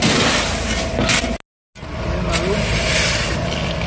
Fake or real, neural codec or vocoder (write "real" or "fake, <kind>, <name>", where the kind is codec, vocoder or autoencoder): real